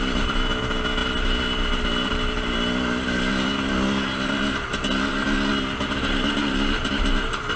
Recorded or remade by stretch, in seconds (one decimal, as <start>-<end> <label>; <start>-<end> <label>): 0.0-7.6 recorded